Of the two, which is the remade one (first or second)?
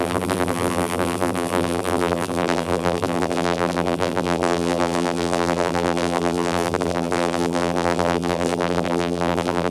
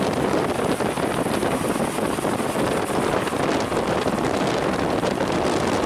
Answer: first